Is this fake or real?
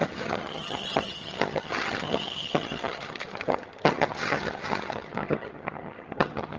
fake